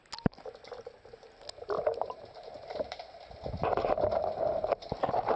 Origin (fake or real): real